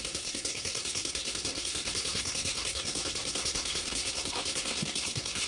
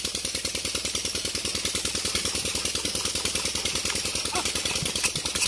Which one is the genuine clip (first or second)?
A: second